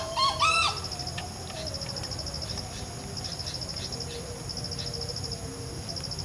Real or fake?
real